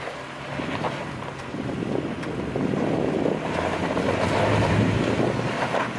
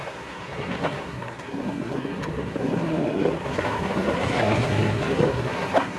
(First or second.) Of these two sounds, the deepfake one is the second